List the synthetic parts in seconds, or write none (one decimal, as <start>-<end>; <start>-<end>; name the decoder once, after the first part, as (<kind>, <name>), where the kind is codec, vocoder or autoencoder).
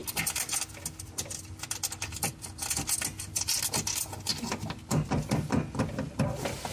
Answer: none